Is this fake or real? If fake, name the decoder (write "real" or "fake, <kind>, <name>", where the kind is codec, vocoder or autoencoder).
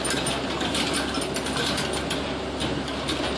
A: real